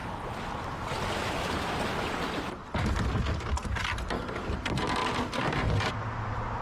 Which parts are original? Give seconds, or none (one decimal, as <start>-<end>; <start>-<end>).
0.0-3.6; 4.2-6.6